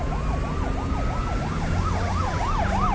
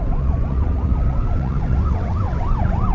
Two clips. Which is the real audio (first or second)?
first